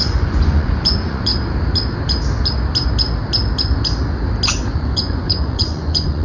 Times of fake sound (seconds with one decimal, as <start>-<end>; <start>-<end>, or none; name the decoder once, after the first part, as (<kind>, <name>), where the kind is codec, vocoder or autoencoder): 0.0-1.3 (vocoder, Vocos); 4.7-6.2